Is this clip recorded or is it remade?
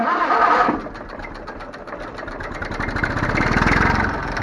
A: recorded